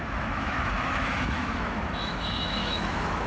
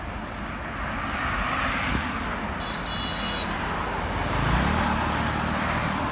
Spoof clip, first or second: first